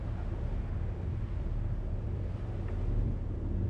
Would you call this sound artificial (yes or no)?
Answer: no